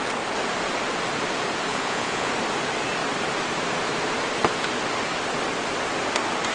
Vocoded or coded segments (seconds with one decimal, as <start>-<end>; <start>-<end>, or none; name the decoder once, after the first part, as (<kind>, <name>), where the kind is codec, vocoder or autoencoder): 1.7-2.3 (vocoder, Vocos)